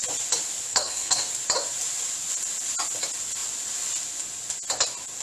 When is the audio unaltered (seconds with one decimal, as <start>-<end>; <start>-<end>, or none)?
0.0-0.7; 1.3-5.2